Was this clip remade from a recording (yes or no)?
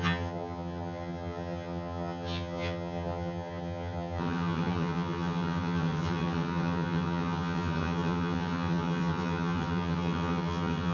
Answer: yes